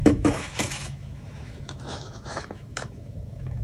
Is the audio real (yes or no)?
no